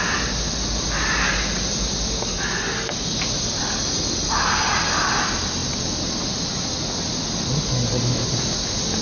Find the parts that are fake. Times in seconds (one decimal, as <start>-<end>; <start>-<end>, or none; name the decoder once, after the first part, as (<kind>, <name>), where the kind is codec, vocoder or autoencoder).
none

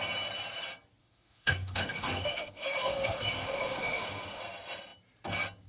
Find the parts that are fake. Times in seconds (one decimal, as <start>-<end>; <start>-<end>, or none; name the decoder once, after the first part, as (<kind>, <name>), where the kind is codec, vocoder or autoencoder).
1.0-4.4 (autoencoder, DAC-VAE)

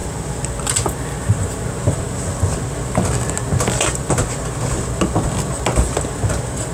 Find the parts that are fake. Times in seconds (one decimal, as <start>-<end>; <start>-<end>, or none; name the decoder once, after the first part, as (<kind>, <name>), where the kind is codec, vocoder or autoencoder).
none

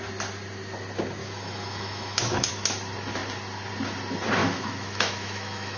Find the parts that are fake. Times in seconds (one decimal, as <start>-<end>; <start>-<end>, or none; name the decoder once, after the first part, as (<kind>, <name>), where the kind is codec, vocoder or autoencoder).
1.2-2.5 (autoencoder, DAC-VAE); 4.4-5.8

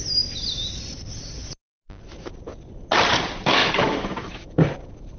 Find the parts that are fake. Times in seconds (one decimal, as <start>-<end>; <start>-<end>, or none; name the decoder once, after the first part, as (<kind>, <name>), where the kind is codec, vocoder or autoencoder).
3.6-4.7 (autoencoder, DAC-VAE)

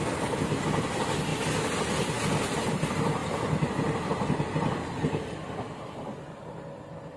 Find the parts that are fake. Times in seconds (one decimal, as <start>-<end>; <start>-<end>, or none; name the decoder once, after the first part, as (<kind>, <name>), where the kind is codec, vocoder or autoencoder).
none